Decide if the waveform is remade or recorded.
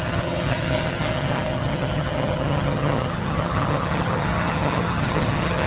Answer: remade